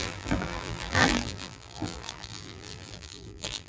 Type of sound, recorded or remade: remade